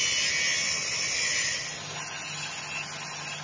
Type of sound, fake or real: real